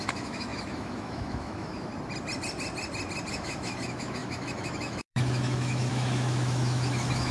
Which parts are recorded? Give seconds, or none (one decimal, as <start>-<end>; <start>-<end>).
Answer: 1.9-3.3

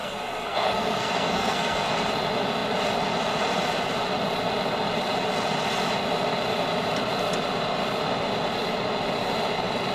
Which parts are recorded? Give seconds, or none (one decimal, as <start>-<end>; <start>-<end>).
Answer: 1.9-9.9

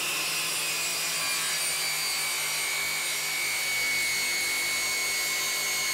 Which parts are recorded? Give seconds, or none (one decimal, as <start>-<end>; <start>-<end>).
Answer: 0.0-5.9

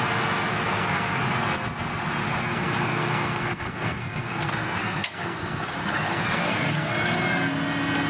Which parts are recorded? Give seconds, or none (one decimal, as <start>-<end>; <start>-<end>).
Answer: 0.0-0.5; 1.2-2.2; 6.9-8.1

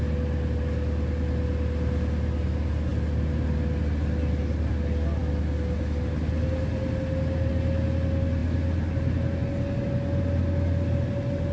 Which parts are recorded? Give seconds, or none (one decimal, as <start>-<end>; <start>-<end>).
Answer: 0.0-11.5

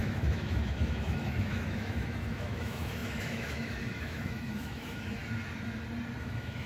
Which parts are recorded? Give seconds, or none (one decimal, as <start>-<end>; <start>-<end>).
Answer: 5.2-6.2